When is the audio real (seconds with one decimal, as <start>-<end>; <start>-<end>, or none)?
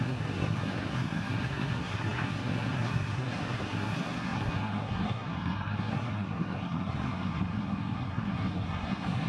none